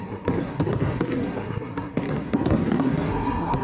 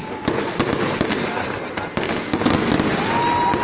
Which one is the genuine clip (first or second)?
second